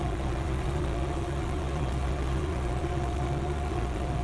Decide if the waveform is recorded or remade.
remade